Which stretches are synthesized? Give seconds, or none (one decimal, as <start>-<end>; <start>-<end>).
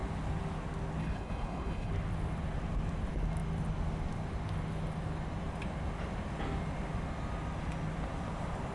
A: 1.0-1.9